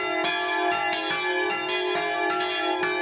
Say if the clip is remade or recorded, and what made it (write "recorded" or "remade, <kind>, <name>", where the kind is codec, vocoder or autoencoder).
recorded